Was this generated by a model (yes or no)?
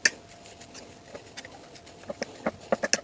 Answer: no